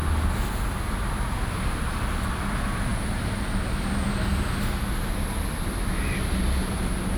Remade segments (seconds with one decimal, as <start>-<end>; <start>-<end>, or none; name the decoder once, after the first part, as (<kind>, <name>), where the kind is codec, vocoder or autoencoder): none